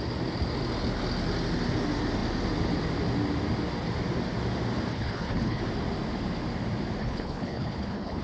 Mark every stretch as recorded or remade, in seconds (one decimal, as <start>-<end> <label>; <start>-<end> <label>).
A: 0.0-4.9 recorded; 4.9-5.6 remade; 5.6-7.0 recorded; 7.0-8.2 remade